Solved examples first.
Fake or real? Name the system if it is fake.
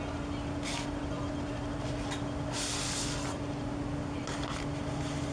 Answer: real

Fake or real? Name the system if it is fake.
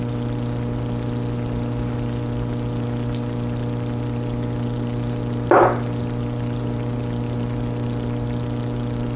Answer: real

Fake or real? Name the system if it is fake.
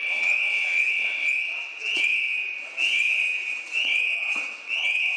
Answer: fake, vocoder, WaveNeXt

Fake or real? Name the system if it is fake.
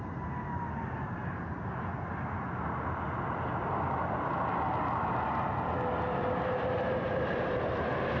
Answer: real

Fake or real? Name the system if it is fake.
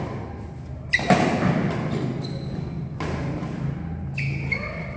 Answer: real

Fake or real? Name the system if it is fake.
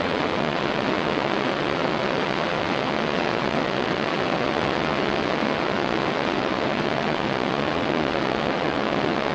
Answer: fake, vocoder, WaveNeXt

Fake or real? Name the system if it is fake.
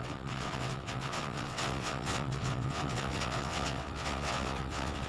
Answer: fake, vocoder, WaveNeXt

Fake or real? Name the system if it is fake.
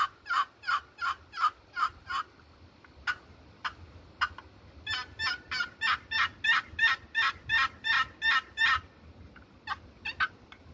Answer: real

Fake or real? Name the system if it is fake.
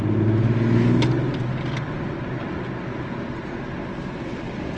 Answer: real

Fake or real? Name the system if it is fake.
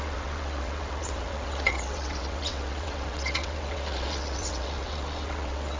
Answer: fake, vocoder, WaveNeXt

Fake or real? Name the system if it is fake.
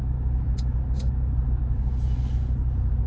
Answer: real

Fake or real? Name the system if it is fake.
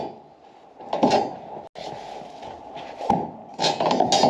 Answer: real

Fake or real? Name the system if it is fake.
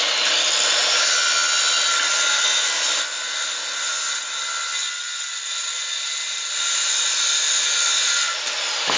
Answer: real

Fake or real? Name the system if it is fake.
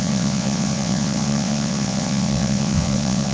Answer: fake, vocoder, WaveNeXt